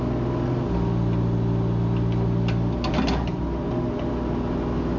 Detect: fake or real real